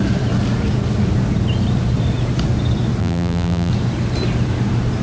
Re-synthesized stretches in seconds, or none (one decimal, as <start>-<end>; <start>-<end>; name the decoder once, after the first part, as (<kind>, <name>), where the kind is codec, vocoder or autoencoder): 3.0-3.7 (vocoder, BigVGAN v2)